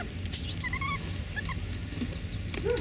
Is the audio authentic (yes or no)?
yes